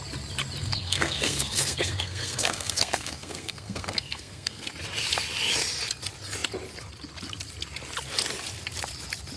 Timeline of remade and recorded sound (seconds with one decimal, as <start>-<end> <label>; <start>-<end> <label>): 0.0-0.6 recorded; 0.6-4.7 remade; 4.7-9.4 recorded

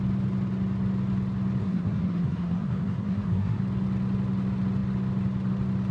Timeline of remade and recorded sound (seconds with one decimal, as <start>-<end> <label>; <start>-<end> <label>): 0.0-1.6 recorded; 1.6-3.6 remade; 3.6-5.9 recorded